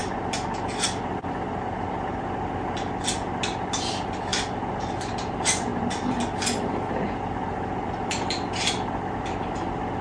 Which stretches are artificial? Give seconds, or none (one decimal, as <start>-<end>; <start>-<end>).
none